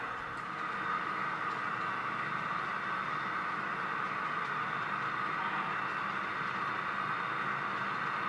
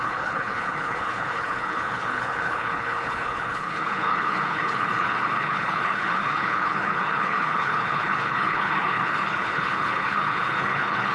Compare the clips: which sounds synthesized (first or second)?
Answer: second